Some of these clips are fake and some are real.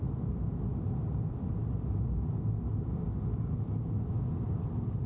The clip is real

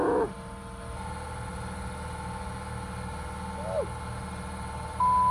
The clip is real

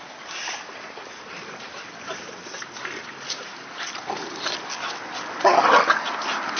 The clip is real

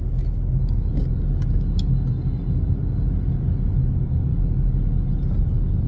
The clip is real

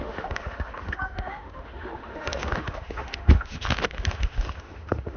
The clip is fake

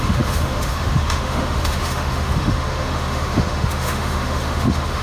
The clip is fake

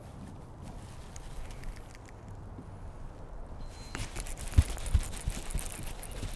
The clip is real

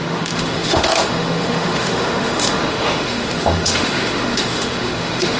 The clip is fake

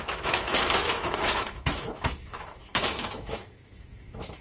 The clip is fake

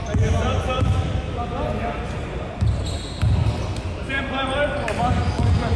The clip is real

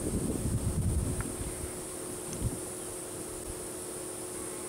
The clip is real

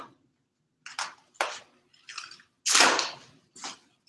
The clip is real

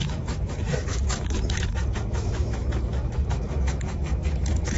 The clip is fake